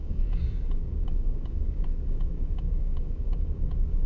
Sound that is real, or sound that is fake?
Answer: fake